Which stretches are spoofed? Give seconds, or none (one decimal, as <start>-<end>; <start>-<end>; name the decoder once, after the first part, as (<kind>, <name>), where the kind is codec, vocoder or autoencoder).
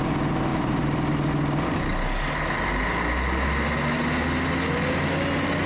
0.5-1.1 (vocoder, BigVGAN v2)